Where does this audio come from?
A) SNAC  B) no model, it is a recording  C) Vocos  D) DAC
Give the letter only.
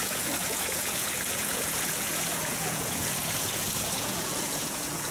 C